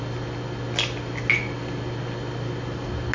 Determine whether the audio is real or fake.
real